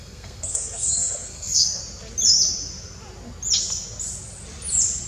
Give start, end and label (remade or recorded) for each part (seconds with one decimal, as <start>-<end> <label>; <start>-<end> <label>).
0.0-1.8 remade; 1.8-5.1 recorded